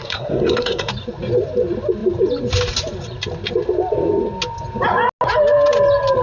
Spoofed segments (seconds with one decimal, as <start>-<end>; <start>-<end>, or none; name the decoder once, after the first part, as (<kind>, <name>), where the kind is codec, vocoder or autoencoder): 0.0-0.9 (codec, SNAC)